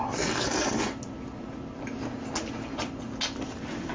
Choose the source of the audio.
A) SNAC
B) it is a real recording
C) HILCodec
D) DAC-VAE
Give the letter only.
B